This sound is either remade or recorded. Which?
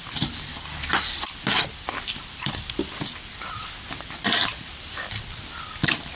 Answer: remade